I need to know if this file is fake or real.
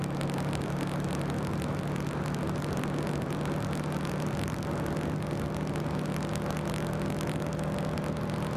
real